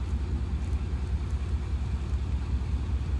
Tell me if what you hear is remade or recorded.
recorded